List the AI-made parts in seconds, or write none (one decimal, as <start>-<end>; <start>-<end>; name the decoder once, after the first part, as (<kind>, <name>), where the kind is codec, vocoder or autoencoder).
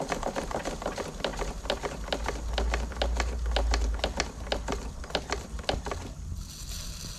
none